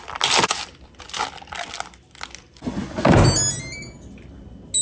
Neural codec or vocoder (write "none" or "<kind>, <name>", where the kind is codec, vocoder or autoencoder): none